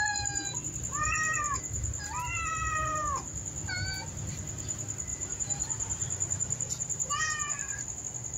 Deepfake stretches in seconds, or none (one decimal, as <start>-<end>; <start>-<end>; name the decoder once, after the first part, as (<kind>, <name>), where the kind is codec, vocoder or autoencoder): 5.1-8.0 (vocoder, BigVGAN v2)